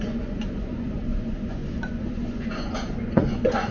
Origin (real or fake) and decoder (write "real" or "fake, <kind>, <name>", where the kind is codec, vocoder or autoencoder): fake, vocoder, Vocos